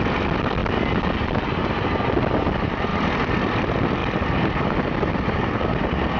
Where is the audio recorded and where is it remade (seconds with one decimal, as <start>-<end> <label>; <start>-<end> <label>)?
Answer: 0.0-0.6 remade; 0.6-1.7 recorded; 1.7-4.0 remade; 4.0-5.1 recorded; 5.1-6.2 remade